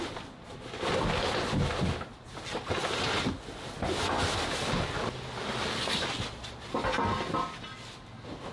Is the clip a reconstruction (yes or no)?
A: no